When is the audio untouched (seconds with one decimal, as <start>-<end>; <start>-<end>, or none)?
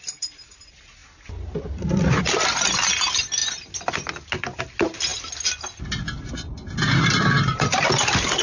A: 0.0-8.4